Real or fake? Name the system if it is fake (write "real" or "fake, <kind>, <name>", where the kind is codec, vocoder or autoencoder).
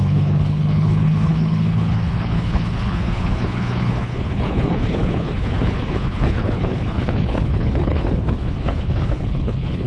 fake, codec, HILCodec